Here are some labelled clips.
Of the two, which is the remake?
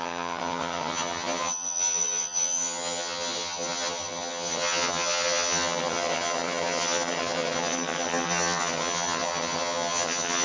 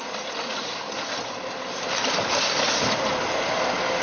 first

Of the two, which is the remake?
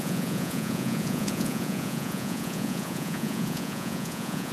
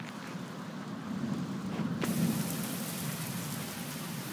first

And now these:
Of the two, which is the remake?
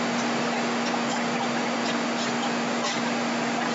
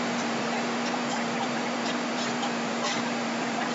second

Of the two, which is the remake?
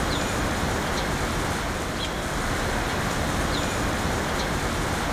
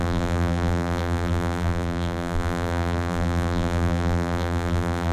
second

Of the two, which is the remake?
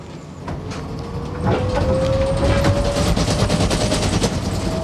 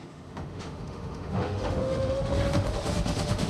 second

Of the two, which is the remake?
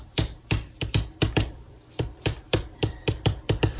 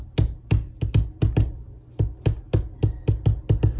first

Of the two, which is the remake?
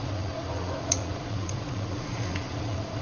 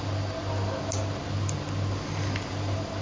first